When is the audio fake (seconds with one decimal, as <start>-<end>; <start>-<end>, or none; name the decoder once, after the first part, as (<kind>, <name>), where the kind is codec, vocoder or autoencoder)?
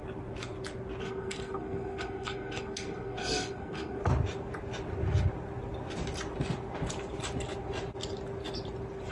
1.0-4.0 (codec, SNAC)